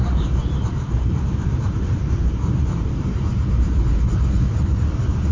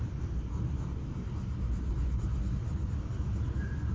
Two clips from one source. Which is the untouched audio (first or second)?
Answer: second